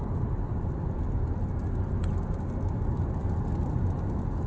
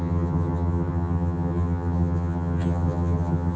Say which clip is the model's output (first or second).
second